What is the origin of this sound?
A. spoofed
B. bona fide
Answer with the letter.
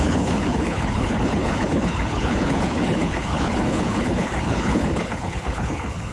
A